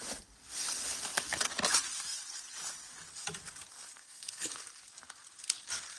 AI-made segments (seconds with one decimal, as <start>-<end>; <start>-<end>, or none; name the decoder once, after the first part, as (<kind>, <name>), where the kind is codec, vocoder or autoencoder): 4.0-4.5 (codec, SNAC)

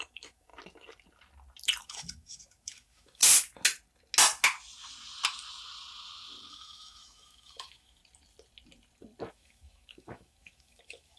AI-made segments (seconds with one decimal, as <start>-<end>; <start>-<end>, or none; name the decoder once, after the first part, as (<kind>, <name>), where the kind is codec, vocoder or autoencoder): 0.0-0.5 (autoencoder, DAC-VAE); 1.8-3.2; 6.5-8.0; 9.3-11.2

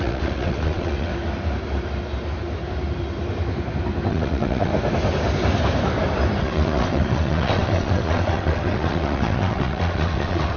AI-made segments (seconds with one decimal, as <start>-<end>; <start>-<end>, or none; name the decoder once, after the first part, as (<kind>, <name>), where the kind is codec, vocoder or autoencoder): 0.0-1.1 (vocoder, WaveNeXt); 4.1-4.7; 6.4-10.6

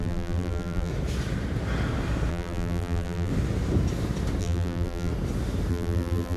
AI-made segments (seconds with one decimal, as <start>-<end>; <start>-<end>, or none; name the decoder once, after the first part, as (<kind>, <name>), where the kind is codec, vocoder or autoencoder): 0.0-0.9 (vocoder, BigVGAN v2); 2.3-3.3; 4.4-5.1; 5.7-6.4

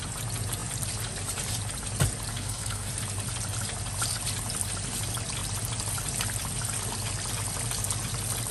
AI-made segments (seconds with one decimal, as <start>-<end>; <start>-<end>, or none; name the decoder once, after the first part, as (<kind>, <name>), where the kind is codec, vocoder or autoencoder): 2.3-2.9 (codec, SNAC)